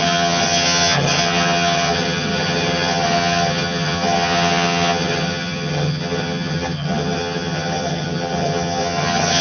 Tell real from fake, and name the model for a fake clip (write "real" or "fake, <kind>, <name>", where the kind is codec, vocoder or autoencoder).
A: fake, vocoder, HiFi-GAN